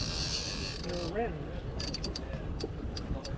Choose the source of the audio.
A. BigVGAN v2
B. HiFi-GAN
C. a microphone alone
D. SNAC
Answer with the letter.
C